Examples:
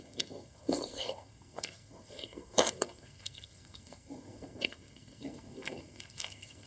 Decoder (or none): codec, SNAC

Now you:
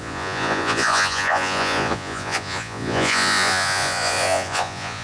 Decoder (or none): vocoder, Vocos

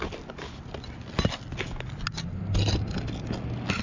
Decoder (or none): none